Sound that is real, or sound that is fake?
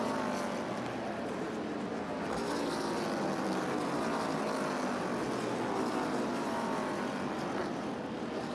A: real